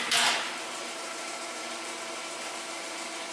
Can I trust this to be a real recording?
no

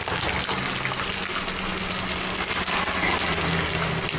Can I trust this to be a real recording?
yes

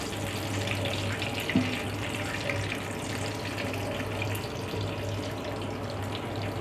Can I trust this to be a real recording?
yes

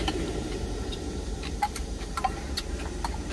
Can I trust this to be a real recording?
no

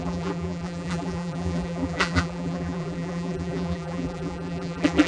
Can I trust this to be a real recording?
no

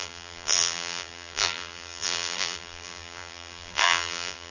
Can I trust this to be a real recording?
no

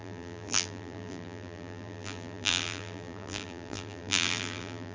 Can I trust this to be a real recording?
no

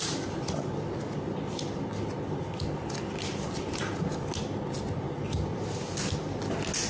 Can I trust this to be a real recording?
yes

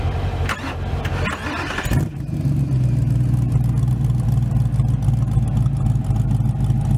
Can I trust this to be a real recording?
yes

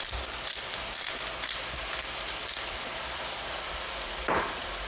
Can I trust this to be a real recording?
no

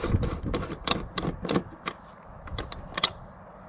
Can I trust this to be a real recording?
no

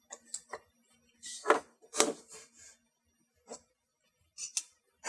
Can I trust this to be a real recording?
yes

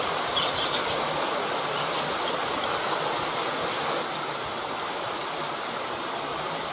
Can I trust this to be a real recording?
yes